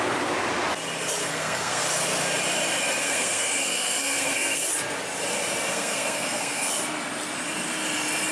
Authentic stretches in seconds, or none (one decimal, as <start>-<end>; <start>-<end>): 0.0-1.2; 1.8-3.0; 4.7-5.7; 6.7-8.3